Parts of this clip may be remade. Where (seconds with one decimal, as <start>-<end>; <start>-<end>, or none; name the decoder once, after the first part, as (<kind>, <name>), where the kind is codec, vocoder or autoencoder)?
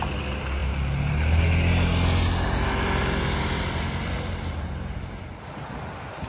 none